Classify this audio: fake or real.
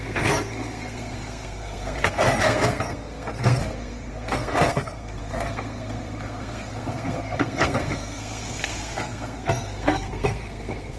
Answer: fake